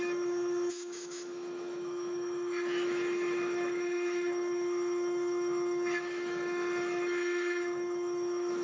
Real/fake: fake